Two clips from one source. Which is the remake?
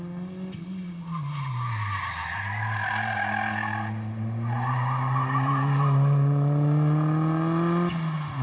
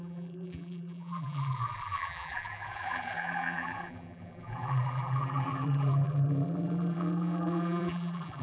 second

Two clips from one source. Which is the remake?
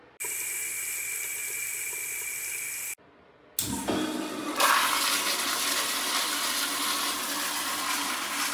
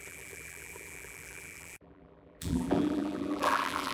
second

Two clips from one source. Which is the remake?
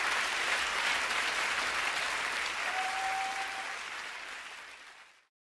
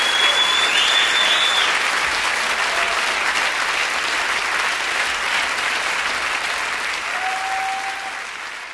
first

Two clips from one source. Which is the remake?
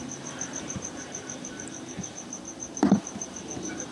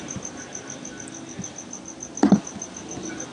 first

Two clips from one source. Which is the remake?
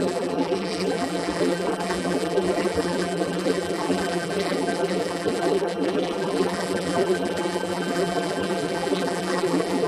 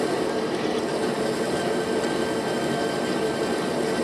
first